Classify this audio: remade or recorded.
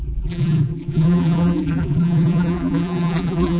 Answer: remade